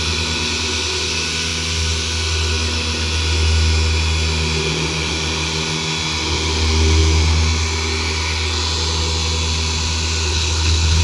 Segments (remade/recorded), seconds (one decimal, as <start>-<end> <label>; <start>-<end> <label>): 0.0-10.3 recorded; 10.3-11.0 remade